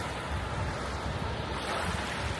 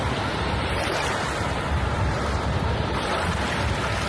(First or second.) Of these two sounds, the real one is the first